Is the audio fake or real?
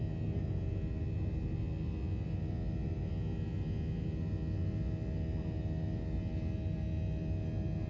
real